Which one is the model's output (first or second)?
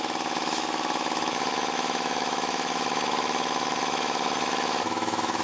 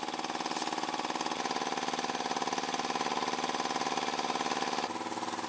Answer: first